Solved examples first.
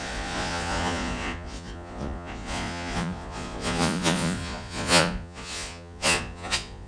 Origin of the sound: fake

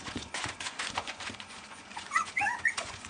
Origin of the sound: fake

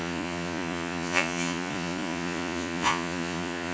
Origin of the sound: fake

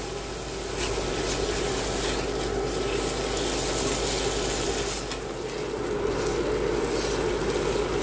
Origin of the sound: real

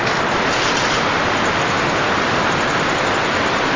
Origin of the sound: real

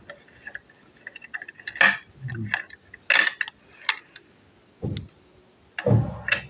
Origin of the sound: real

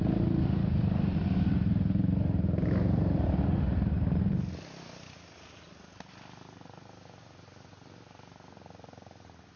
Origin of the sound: real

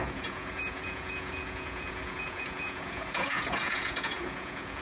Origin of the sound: fake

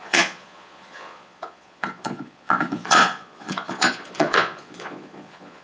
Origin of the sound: fake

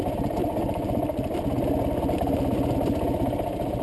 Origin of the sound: real